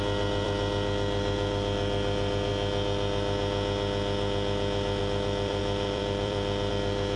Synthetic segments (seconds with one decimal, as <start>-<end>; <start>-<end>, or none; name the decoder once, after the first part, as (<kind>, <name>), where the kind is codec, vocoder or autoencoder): 0.0-2.5 (vocoder, BigVGAN v2); 5.0-7.2